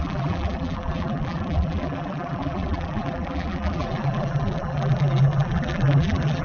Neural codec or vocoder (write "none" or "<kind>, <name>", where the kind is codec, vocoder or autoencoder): vocoder, BigVGAN v2